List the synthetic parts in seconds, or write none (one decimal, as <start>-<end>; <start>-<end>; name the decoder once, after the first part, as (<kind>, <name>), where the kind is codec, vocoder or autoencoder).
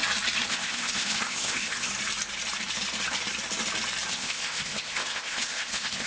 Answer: 0.5-1.9 (codec, ZipCodec); 4.1-6.1